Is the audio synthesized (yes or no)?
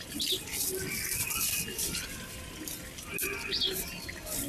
no